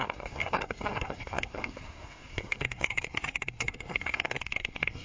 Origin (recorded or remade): remade